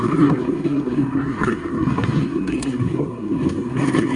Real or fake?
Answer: fake